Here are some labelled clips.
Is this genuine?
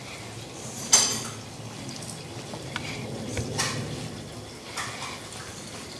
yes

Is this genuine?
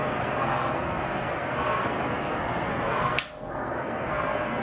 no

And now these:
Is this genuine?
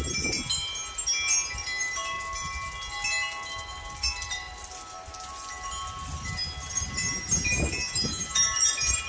yes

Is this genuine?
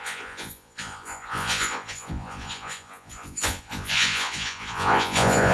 no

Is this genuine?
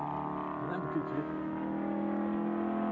yes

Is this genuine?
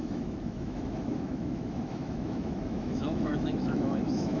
no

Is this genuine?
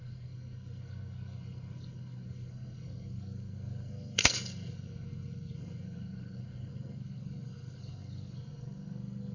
no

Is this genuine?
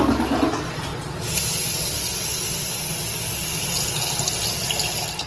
yes